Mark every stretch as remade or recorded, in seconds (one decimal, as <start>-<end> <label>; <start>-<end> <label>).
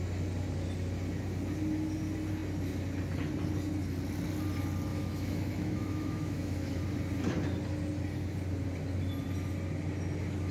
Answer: 0.0-4.9 recorded; 4.9-6.8 remade; 6.8-10.5 recorded